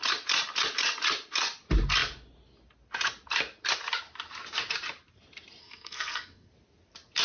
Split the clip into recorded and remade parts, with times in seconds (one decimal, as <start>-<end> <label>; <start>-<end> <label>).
0.0-5.6 recorded; 5.6-6.5 remade; 6.5-7.2 recorded